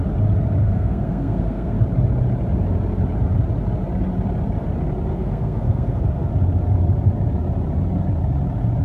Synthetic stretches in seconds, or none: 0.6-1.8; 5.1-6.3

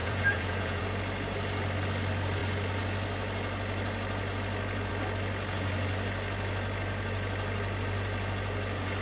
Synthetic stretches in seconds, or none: 0.0-0.8